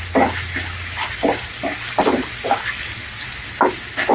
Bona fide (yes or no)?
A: yes